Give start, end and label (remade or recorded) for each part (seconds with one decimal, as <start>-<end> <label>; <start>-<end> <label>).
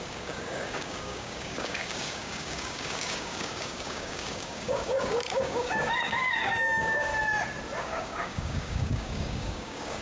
0.0-7.1 remade; 7.1-7.8 recorded; 7.8-10.0 remade